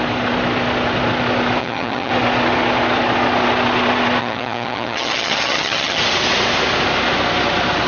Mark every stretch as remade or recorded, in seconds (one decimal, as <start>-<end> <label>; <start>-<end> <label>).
0.0-1.6 recorded; 1.6-2.1 remade; 2.1-4.2 recorded; 4.2-6.0 remade; 6.0-7.9 recorded